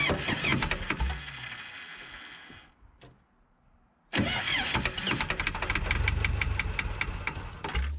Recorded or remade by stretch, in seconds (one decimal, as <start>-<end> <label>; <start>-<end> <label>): 0.0-8.0 recorded